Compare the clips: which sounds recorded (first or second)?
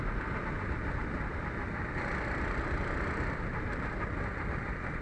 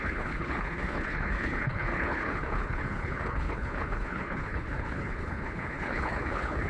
first